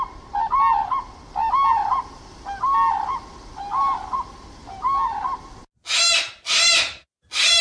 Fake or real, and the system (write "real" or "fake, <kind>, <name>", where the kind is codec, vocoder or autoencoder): real